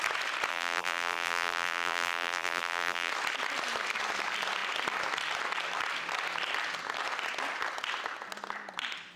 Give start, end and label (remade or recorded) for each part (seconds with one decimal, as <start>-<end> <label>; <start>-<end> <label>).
0.0-0.5 recorded; 0.5-3.1 remade; 3.1-9.2 recorded